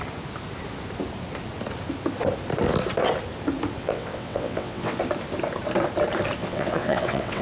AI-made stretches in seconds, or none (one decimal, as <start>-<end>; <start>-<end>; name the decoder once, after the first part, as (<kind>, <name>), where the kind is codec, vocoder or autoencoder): 3.8-5.0 (vocoder, WaveNeXt); 6.4-7.4